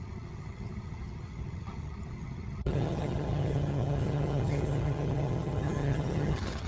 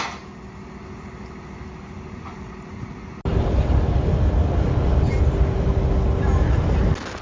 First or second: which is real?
second